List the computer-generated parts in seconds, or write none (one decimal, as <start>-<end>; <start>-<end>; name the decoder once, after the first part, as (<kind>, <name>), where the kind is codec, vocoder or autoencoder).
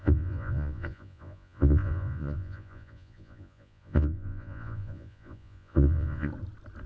0.0-6.3 (vocoder, Vocos)